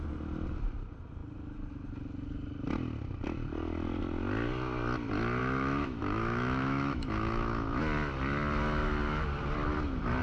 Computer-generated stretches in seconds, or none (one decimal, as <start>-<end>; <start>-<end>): 5.4-7.8